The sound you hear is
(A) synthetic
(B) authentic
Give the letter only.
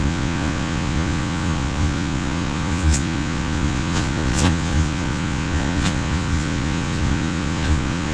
A